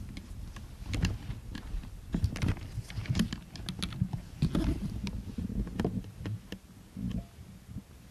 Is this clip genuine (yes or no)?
yes